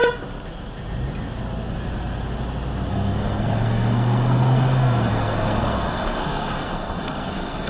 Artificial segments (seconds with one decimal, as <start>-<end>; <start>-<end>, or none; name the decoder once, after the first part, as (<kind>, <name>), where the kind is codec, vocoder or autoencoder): 2.9-7.7 (codec, SNAC)